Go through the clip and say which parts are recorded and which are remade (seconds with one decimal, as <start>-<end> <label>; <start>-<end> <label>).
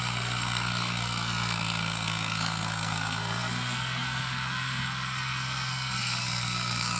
0.0-7.0 remade